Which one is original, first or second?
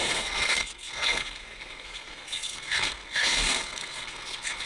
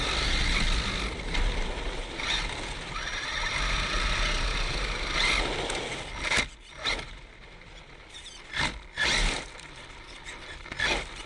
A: second